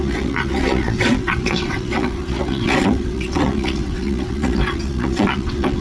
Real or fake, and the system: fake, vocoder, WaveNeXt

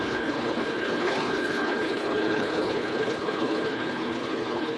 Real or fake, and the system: fake, codec, HILCodec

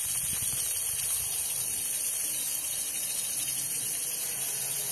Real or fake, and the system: real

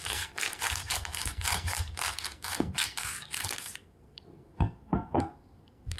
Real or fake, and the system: fake, codec, SNAC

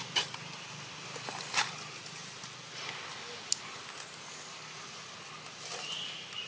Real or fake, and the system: real